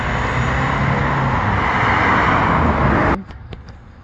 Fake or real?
real